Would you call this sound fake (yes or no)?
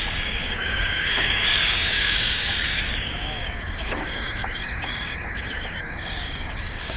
yes